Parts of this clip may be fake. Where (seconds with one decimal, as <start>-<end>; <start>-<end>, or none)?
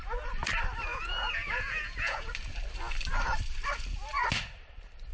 0.9-2.3